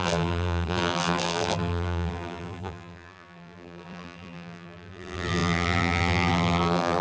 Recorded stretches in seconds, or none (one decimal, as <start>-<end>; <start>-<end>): none